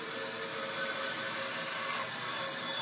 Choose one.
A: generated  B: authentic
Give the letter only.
B